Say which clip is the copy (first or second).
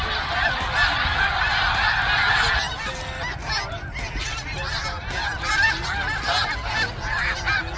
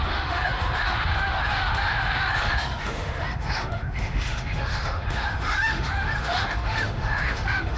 second